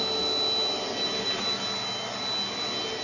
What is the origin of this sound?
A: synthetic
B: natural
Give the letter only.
B